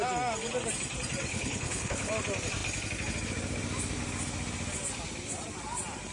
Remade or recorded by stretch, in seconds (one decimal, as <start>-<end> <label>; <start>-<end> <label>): 0.0-1.3 recorded; 1.3-2.1 remade; 2.1-6.1 recorded